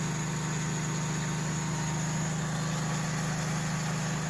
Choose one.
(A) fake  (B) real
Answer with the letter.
B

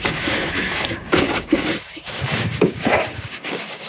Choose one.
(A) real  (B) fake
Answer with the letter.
B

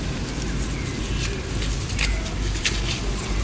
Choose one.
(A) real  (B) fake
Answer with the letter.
A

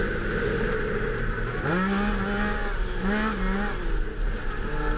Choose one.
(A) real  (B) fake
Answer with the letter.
A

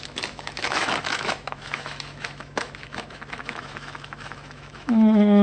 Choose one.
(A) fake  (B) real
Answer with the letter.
A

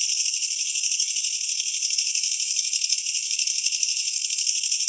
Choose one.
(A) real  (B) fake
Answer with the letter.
B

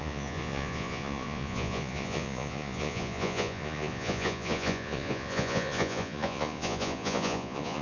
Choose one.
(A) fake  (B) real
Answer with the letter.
A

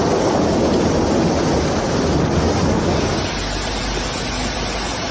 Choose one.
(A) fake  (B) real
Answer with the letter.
B